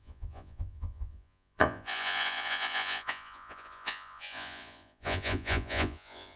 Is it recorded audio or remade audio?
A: remade